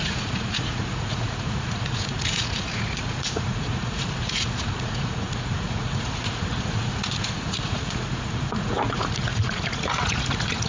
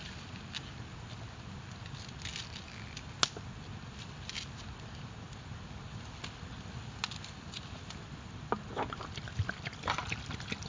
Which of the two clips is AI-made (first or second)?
first